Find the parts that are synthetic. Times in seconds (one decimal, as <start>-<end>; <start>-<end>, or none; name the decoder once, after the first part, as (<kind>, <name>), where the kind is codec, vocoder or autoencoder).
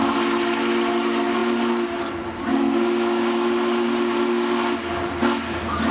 none